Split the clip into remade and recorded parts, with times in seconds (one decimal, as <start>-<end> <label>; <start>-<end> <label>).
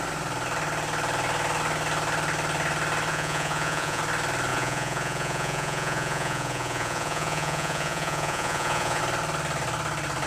0.0-3.1 recorded; 3.1-4.0 remade; 4.0-4.5 recorded; 4.5-9.0 remade; 9.0-10.3 recorded